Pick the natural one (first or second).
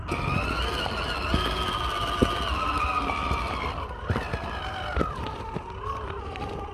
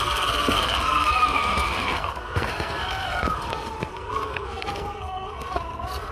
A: first